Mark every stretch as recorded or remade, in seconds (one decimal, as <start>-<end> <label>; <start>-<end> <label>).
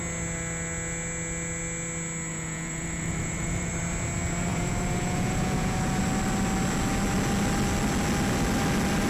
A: 0.0-2.3 recorded; 2.3-3.7 remade; 3.7-4.5 recorded; 4.5-6.0 remade; 6.0-9.1 recorded